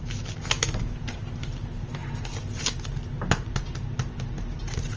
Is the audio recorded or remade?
recorded